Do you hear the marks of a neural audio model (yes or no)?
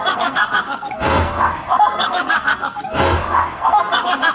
yes